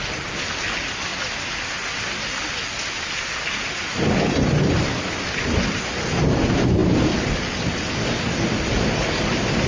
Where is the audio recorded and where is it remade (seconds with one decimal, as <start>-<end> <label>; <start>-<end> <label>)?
0.0-9.7 recorded